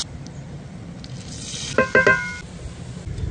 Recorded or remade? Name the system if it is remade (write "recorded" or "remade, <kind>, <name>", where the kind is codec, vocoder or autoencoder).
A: recorded